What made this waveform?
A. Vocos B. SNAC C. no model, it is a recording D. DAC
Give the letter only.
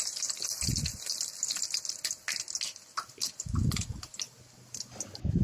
C